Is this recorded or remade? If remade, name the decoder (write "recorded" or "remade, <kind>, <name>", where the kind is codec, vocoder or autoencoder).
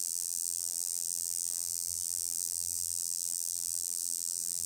remade, vocoder, BigVGAN v2